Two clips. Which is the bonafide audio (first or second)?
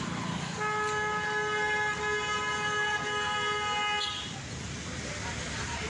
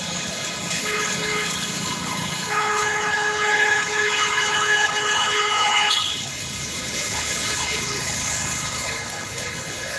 first